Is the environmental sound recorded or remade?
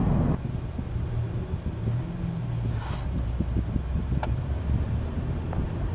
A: recorded